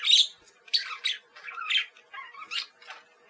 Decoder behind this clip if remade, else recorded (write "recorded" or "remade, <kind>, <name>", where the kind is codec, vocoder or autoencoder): recorded